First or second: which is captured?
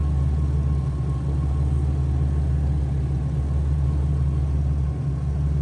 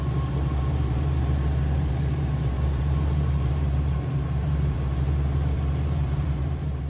first